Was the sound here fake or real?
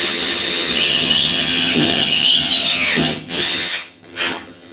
fake